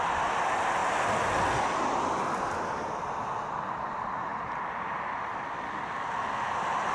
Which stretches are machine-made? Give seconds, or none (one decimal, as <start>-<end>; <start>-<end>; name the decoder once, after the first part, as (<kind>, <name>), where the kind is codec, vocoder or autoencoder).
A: none